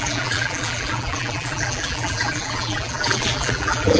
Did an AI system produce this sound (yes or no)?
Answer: yes